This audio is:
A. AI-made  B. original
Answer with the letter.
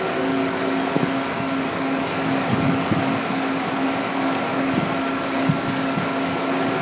A